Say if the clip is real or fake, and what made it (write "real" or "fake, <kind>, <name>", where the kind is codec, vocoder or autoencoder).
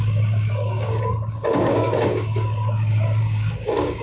fake, codec, DAC